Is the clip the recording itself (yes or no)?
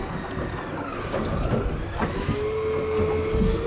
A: yes